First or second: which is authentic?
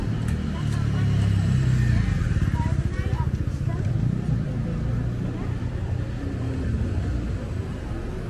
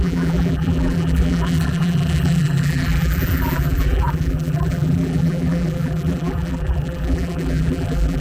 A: first